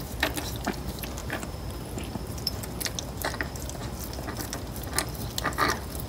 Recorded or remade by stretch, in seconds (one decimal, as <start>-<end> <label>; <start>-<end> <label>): 0.0-1.2 recorded; 1.2-2.6 remade; 2.6-6.1 recorded